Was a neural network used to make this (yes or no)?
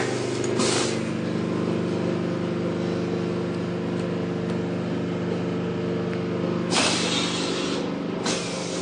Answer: no